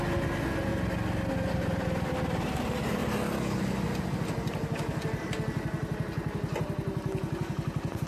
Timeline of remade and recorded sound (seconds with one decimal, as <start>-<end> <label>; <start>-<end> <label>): 0.0-8.1 recorded